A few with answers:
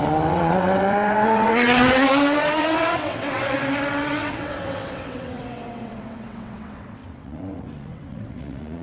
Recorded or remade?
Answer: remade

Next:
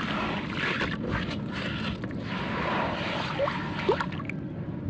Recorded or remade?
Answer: recorded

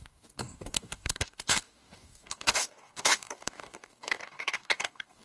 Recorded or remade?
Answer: remade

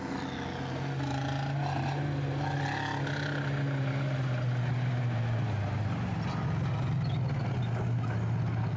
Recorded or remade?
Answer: recorded